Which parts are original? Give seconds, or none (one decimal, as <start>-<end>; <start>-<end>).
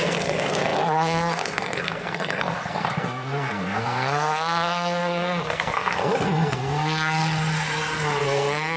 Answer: 7.2-8.2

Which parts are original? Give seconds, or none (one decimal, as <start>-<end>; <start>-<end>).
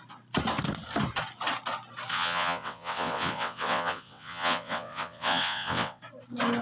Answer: 0.0-2.1; 6.0-6.6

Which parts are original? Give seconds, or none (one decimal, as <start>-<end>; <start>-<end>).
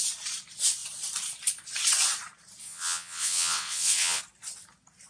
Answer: 0.0-2.6; 4.2-5.1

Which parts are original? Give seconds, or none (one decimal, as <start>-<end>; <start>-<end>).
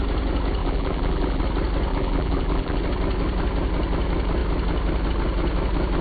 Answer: 0.0-0.6; 1.4-1.9; 2.8-6.0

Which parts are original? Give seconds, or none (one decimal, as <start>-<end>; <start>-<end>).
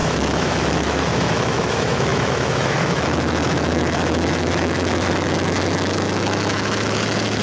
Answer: none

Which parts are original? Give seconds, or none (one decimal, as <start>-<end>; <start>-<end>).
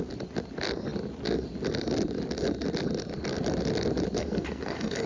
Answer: 0.0-4.2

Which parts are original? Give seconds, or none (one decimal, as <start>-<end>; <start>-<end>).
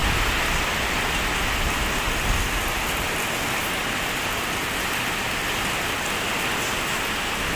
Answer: 0.0-7.6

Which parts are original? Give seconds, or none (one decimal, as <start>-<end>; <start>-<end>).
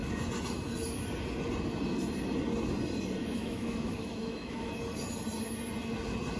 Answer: 0.0-3.2; 4.7-6.4